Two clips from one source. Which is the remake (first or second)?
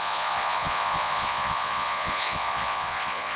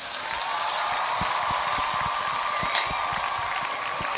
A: first